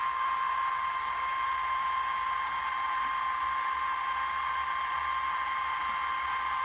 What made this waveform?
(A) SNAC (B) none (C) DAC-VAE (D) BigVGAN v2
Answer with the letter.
B